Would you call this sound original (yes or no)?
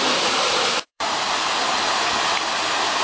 no